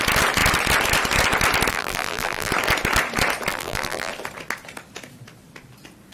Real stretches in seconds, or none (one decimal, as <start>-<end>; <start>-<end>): 0.0-1.7; 2.5-3.5; 4.1-6.1